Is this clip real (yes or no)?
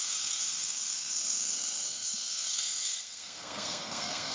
no